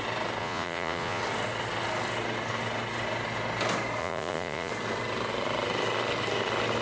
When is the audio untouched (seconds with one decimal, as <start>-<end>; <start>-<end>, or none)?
0.0-0.4; 1.2-4.0; 4.7-6.8